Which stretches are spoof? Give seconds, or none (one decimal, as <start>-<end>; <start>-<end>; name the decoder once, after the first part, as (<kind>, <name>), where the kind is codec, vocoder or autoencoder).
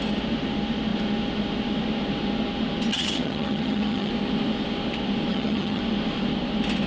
2.9-4.1 (vocoder, HiFi-GAN); 5.3-5.8